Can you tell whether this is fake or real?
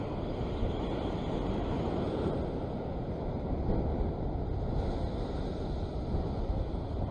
real